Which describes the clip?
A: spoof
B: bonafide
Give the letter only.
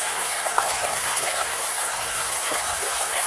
A